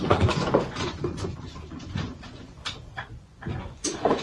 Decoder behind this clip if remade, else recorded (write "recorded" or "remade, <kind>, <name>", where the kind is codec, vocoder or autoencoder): remade, vocoder, Vocos